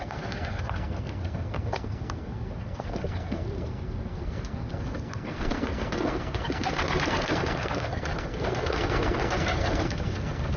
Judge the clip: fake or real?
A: fake